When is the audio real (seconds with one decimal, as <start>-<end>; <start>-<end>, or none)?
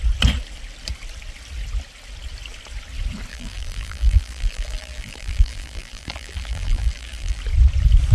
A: 0.0-3.3; 7.4-8.1